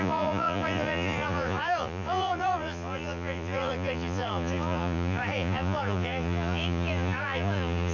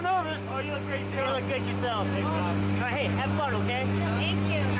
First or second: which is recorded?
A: second